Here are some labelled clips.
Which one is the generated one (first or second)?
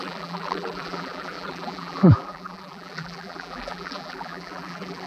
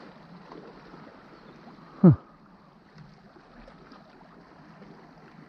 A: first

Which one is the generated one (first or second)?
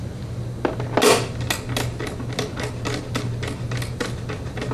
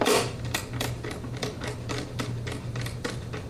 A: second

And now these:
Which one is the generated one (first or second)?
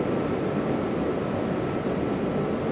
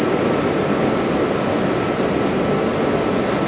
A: first